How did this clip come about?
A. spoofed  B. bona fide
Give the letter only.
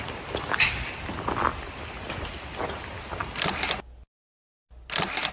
B